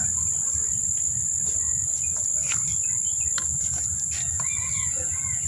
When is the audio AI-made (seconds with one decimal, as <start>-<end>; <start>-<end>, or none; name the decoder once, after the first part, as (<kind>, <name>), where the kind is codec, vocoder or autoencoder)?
none